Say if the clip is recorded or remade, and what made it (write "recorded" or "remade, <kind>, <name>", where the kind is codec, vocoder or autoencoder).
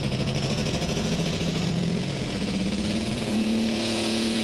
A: remade, vocoder, Vocos